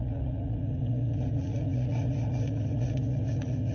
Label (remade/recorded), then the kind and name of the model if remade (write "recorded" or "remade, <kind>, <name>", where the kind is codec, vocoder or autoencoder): remade, vocoder, Vocos